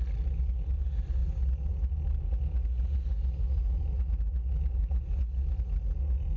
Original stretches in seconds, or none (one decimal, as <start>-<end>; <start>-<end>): 0.0-6.4